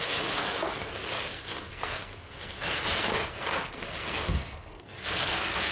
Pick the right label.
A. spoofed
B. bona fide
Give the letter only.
A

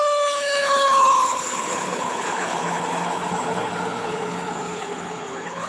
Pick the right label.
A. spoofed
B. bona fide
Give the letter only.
A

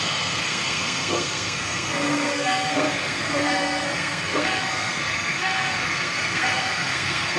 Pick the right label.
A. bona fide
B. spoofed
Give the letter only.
B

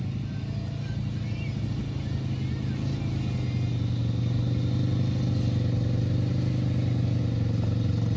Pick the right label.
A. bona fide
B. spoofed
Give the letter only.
A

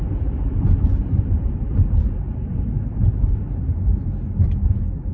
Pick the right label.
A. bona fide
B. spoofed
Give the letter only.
B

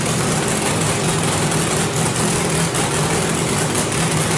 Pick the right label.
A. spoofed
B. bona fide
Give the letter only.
B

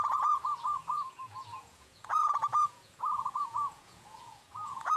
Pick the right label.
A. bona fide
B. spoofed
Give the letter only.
B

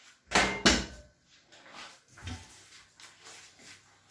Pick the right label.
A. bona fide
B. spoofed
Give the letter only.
A